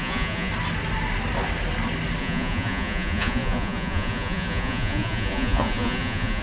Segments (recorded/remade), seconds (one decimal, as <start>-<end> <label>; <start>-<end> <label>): 0.0-0.5 remade; 0.5-2.2 recorded; 2.2-6.4 remade